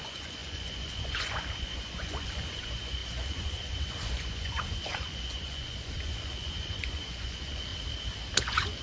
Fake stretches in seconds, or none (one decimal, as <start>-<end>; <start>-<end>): 0.0-7.7; 8.4-8.8